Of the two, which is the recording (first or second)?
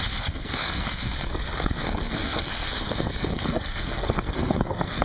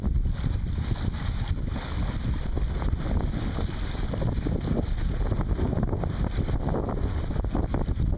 second